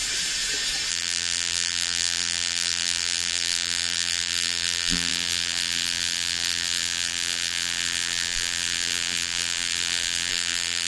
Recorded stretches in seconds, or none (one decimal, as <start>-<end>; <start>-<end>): 0.0-0.9